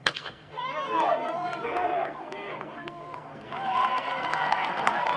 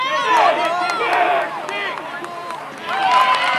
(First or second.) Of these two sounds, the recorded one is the second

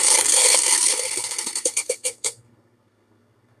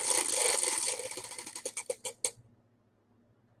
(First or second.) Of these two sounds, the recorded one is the second